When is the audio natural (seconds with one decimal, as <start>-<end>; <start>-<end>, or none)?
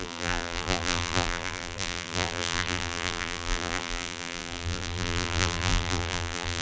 none